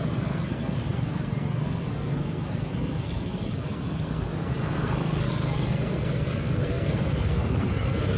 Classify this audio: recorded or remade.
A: remade